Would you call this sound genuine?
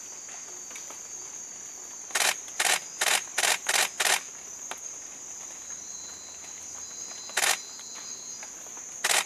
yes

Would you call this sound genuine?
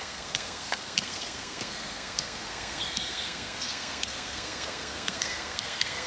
no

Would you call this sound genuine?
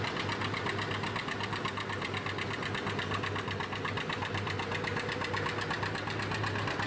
yes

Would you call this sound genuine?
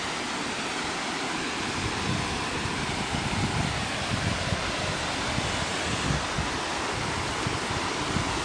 yes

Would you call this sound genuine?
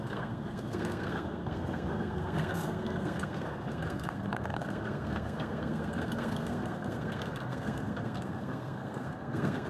no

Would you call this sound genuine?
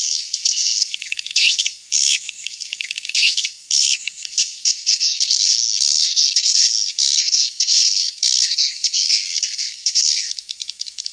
no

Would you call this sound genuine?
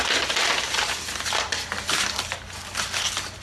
yes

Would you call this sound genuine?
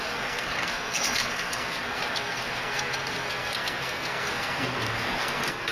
no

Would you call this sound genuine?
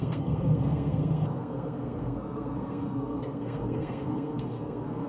no